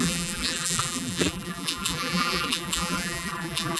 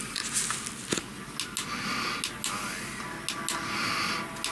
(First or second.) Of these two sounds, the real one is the second